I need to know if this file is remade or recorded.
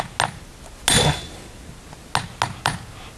recorded